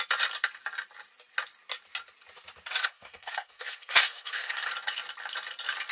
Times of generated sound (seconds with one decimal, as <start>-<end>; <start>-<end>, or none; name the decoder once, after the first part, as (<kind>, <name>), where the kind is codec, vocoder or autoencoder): 2.8-4.7 (codec, SNAC)